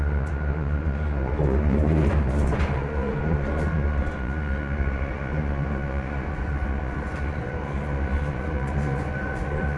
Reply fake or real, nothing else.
fake